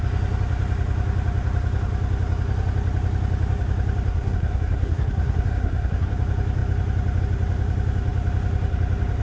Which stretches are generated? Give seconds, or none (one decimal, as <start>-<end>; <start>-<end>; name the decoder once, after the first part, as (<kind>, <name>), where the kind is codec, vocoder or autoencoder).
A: 4.1-6.1 (codec, SNAC)